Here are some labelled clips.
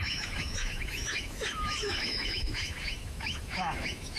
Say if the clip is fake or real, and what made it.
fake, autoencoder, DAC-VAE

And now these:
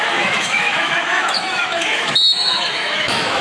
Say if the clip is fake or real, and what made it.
fake, autoencoder, DAC-VAE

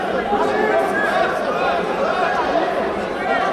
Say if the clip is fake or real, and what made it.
real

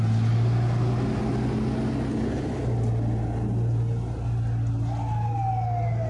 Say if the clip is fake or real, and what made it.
real